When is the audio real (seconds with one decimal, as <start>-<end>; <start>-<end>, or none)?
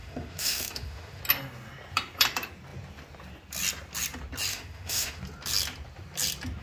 1.2-4.5; 5.2-6.6